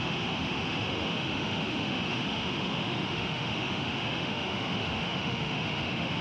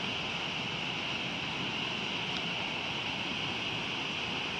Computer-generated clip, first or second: first